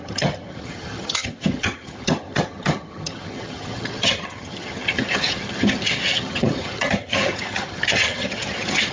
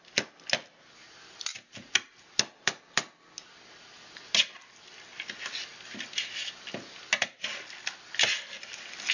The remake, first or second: first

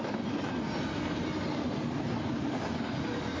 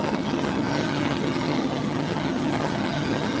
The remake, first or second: second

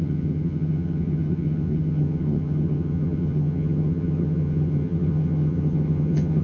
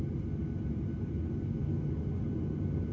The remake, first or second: first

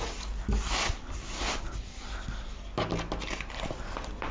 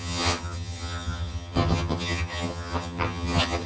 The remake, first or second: second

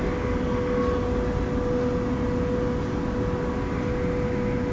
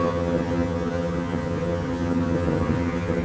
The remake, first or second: second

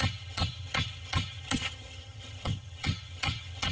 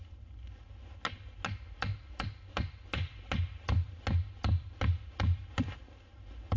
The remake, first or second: first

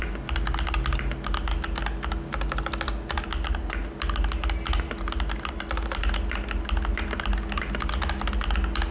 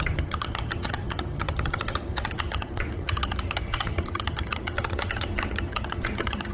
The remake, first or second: second